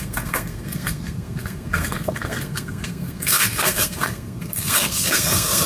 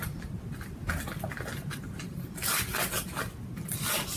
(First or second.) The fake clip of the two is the first